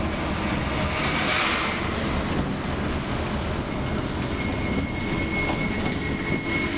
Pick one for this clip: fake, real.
real